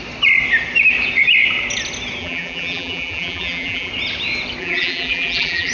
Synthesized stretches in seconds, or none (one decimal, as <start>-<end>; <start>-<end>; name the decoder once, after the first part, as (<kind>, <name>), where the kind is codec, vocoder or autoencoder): 2.2-3.9 (vocoder, BigVGAN v2); 4.6-5.7